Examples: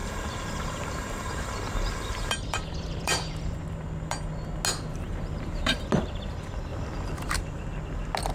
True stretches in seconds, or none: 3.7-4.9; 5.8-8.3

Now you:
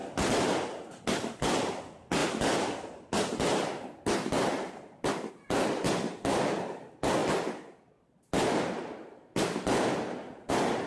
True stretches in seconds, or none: 0.0-10.9

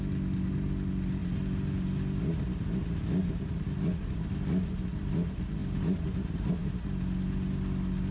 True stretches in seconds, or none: 0.0-5.6; 6.5-8.1

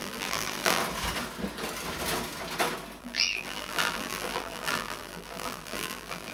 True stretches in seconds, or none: 0.8-3.0